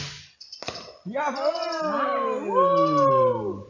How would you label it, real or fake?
real